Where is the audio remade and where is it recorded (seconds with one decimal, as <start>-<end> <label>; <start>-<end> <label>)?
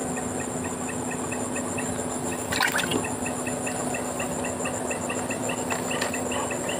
0.0-6.8 recorded